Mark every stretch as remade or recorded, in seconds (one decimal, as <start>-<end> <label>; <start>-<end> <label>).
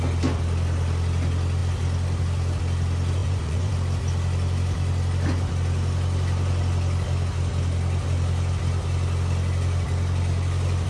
0.0-3.2 recorded; 3.2-3.7 remade; 3.7-10.9 recorded